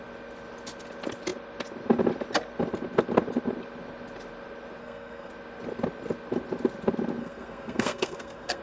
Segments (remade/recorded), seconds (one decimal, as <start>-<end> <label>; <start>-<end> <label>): 0.0-4.8 recorded; 4.8-5.3 remade; 5.3-7.2 recorded; 7.2-8.6 remade